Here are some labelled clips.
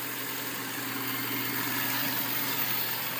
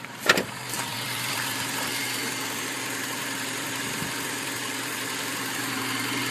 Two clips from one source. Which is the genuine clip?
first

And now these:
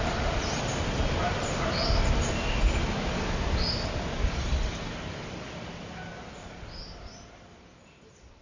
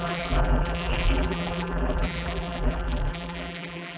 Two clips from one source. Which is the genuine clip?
first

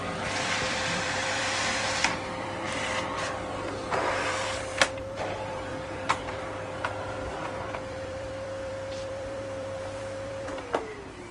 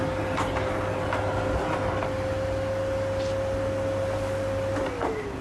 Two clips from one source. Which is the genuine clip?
second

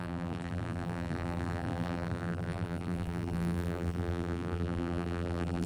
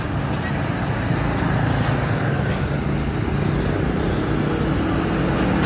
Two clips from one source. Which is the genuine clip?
second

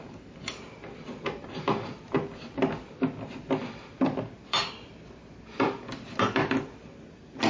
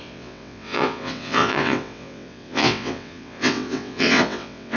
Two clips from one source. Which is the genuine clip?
first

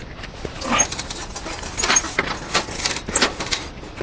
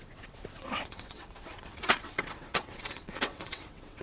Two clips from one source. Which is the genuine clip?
first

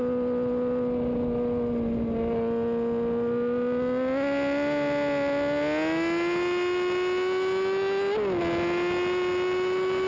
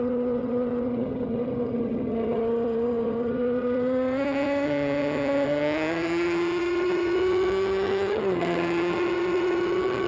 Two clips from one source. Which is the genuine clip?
first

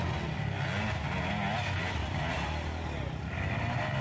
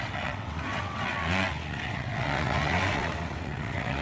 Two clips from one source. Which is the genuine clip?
first